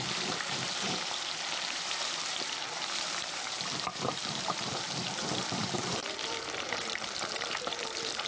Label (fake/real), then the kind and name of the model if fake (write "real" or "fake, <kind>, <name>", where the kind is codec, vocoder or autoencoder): fake, vocoder, BigVGAN v2